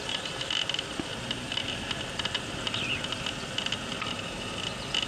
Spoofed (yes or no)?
yes